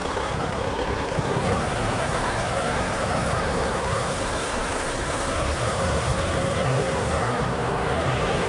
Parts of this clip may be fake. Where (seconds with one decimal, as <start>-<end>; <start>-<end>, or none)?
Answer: 0.0-8.5